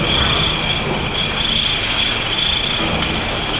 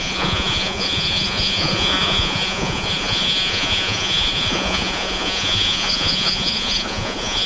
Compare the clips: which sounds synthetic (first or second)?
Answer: second